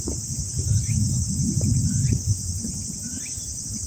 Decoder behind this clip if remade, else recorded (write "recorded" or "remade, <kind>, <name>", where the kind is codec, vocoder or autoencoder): recorded